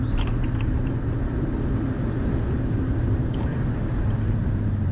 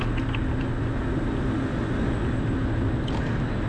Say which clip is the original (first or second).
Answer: second